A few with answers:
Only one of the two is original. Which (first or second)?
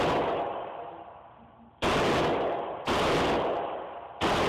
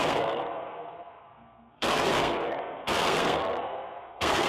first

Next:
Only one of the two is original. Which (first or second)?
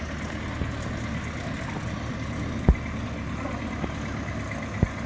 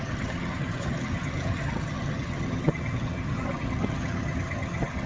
first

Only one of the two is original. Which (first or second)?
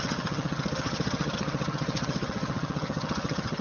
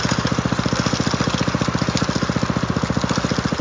second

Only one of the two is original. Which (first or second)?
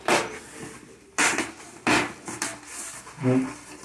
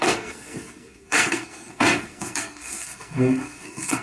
first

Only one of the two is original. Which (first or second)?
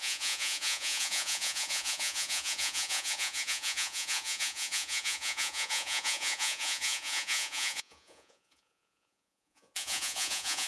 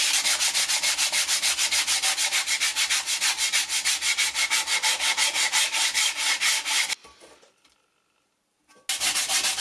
second